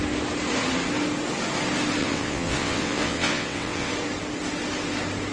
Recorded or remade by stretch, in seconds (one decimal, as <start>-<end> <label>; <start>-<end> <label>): 0.0-2.0 recorded; 2.0-3.9 remade; 3.9-5.3 recorded